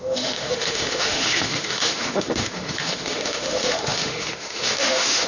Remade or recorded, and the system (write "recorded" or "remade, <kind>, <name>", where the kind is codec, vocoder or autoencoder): remade, autoencoder, DAC-VAE